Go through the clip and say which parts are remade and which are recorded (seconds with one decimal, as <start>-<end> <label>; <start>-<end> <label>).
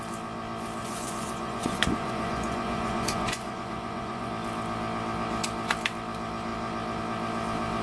0.0-0.8 recorded; 0.8-4.3 remade; 4.3-7.8 recorded